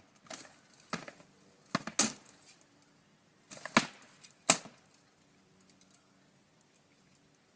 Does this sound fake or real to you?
real